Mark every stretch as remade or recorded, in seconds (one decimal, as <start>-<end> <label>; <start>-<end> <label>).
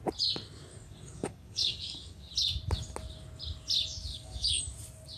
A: 0.0-0.7 recorded; 0.7-2.3 remade; 2.3-4.1 recorded; 4.1-4.6 remade; 4.6-5.2 recorded